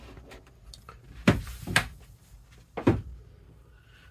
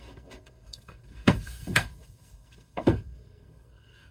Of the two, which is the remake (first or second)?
second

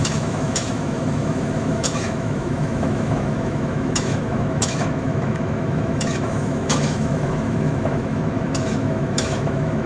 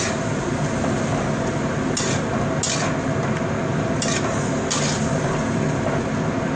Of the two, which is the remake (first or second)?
first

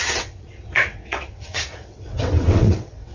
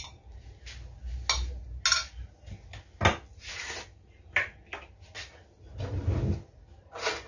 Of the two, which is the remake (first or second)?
first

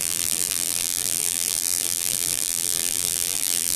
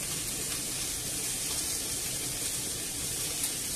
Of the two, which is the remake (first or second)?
first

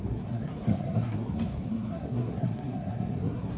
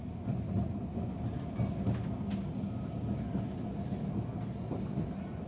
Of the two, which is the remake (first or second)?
first